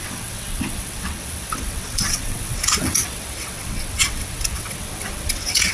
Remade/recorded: remade